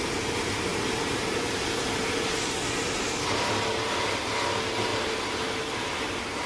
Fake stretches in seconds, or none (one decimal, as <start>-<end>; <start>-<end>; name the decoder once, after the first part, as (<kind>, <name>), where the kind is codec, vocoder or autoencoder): 0.7-1.9 (vocoder, BigVGAN v2); 4.9-6.5